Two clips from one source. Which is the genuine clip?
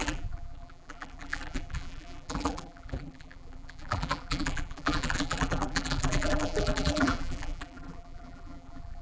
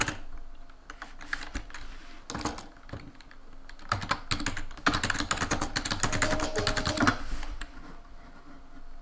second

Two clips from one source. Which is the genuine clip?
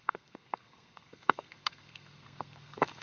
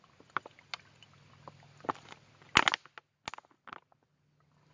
second